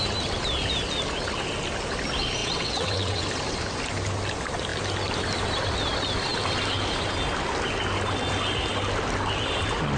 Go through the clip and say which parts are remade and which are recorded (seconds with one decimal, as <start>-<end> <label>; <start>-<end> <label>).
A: 0.0-2.4 recorded; 2.4-3.2 remade; 3.2-10.0 recorded